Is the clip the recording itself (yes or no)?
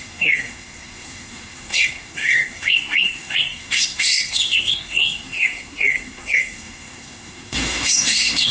no